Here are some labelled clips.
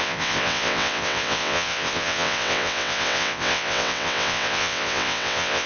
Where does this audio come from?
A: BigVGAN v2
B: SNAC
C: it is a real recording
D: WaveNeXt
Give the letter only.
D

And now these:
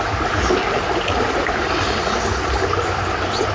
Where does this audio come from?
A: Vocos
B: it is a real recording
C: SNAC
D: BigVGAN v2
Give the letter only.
B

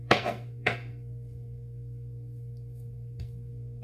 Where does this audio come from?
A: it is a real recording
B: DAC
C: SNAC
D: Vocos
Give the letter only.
C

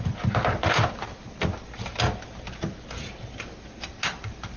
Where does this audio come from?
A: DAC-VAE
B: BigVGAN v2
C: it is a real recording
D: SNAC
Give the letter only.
C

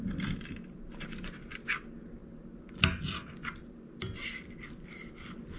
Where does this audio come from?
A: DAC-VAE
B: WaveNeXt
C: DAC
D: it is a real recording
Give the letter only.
D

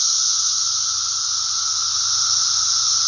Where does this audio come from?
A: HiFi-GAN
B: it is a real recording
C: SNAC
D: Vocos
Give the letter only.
B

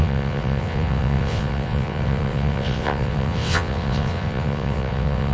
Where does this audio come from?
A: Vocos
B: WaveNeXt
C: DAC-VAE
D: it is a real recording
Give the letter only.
B